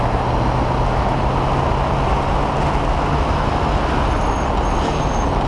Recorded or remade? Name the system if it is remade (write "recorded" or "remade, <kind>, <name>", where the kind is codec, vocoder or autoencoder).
recorded